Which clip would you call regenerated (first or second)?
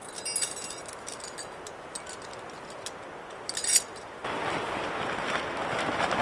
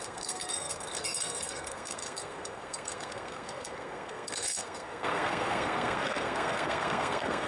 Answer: second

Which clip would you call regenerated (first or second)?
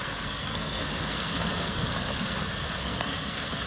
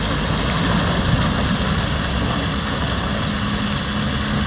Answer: first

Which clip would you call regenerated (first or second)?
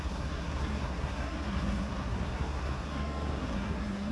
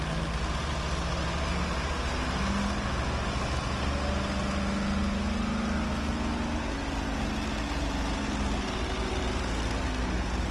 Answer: first